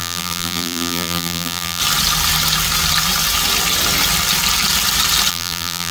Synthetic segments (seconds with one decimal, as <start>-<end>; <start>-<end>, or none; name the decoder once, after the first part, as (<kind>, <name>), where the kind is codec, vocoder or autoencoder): 0.0-1.8 (vocoder, BigVGAN v2); 5.3-5.9